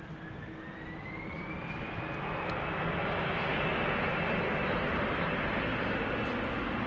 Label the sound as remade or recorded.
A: recorded